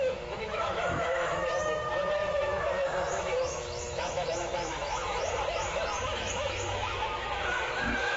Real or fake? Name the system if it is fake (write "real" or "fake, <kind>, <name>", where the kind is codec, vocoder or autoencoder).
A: fake, autoencoder, DAC-VAE